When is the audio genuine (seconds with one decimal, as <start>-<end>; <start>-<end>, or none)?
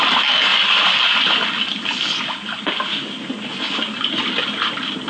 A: 0.0-5.1